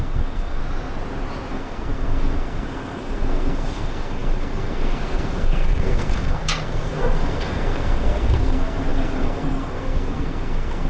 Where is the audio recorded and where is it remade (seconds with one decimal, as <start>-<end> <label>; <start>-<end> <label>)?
0.0-0.6 remade; 0.6-1.5 recorded; 1.5-10.9 remade